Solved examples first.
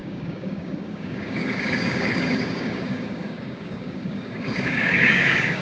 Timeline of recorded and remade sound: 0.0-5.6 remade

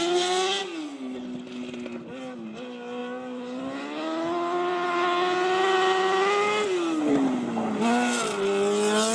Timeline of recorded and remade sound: 0.0-9.1 recorded

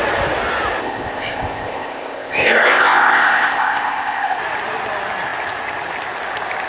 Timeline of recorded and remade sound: 0.0-0.8 recorded; 0.8-4.4 remade; 4.4-6.7 recorded

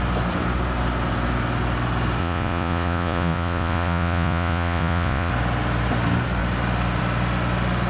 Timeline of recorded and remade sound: 0.0-2.2 recorded; 2.2-5.3 remade; 5.3-7.9 recorded

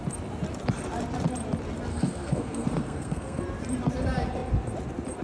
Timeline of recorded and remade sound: 0.0-1.9 recorded; 1.9-3.4 remade; 3.4-5.2 recorded

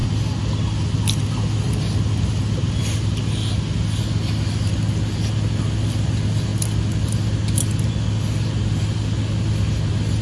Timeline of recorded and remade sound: 0.0-10.2 recorded

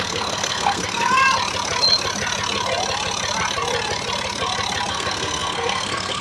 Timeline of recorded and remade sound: 0.0-1.2 remade; 1.2-4.9 recorded; 4.9-6.2 remade